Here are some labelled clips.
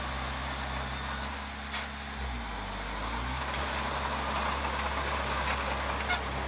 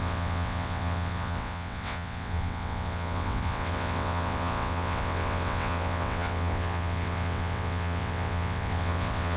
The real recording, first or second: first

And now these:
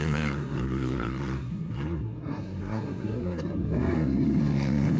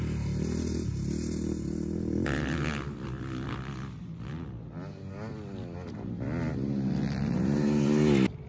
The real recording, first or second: second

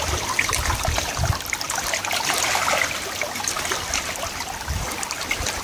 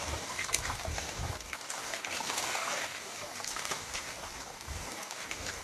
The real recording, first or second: first